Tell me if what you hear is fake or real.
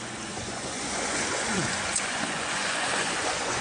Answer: fake